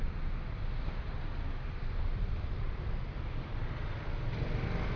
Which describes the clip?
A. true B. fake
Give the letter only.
A